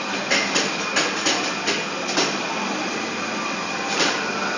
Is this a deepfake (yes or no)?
no